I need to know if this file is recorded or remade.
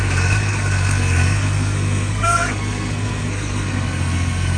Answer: remade